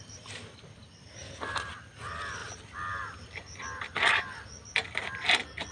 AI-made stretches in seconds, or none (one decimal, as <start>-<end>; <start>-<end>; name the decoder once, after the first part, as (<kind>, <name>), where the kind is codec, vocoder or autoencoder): none